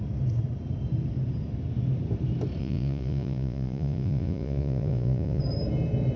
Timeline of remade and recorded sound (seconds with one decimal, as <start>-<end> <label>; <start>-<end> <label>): 0.0-2.6 recorded; 2.6-5.4 remade; 5.4-6.2 recorded